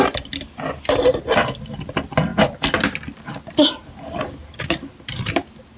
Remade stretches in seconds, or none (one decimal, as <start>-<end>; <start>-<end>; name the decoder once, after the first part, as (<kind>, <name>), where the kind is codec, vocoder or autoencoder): none